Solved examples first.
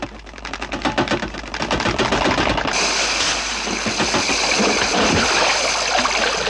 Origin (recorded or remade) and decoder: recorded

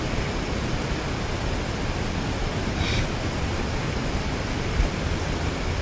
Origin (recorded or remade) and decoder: recorded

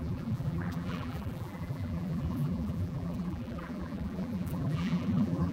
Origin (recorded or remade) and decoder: remade, vocoder, BigVGAN v2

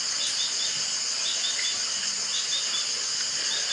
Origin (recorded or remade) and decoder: recorded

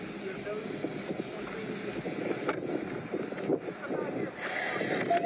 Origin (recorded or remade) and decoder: remade, vocoder, BigVGAN v2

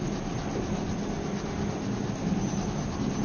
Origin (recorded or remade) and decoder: recorded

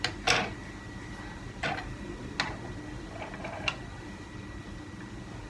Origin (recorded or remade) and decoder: recorded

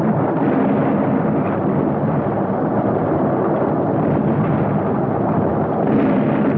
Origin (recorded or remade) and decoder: recorded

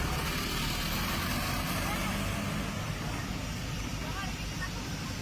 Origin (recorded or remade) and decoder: recorded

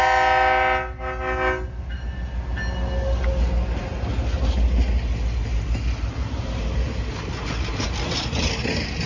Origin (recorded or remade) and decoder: recorded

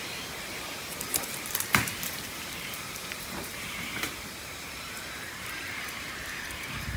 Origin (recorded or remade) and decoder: remade, vocoder, BigVGAN v2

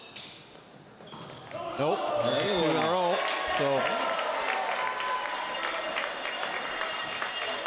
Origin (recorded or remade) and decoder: recorded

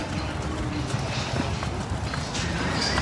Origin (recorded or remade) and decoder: recorded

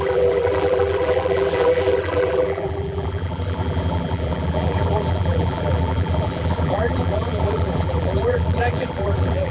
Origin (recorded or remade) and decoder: remade, vocoder, BigVGAN v2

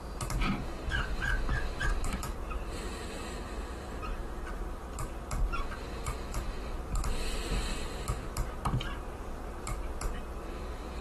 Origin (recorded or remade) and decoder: remade, vocoder, BigVGAN v2